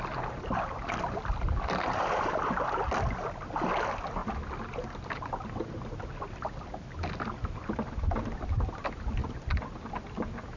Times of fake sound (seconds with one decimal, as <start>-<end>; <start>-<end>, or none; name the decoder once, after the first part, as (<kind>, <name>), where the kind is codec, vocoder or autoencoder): none